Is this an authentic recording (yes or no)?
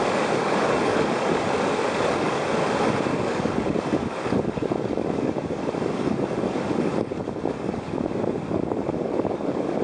no